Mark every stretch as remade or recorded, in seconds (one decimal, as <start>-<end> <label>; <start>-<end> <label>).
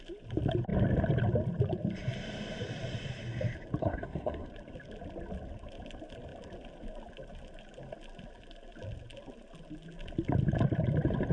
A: 0.0-3.8 recorded; 3.8-4.5 remade; 4.5-11.3 recorded